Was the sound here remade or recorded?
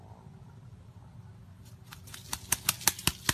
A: recorded